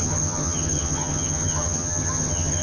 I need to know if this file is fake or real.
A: fake